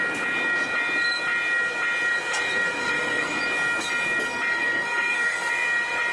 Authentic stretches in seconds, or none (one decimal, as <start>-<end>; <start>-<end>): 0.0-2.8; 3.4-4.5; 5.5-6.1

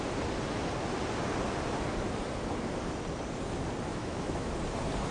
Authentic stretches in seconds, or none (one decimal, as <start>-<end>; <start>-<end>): 0.0-3.9; 4.5-5.1

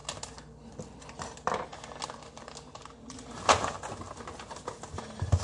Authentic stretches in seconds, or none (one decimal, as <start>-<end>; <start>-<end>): 0.0-5.4

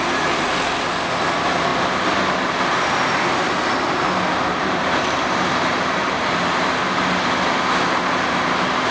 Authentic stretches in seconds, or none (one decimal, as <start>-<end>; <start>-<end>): 0.0-3.7; 6.6-8.9

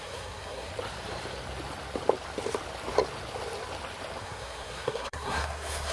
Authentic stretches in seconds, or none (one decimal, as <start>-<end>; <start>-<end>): 0.7-4.2

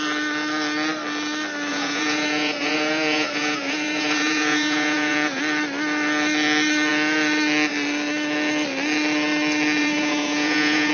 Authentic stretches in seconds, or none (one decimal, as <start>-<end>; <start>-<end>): 0.0-1.7; 5.4-9.8